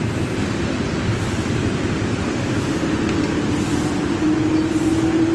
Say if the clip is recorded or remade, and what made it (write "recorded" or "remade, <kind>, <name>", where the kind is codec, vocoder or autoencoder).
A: recorded